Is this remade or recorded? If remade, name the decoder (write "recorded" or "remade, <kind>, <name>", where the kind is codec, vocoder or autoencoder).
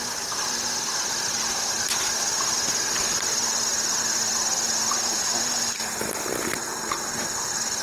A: recorded